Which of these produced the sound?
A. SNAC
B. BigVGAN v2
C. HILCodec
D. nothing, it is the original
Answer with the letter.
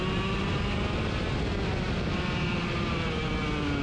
D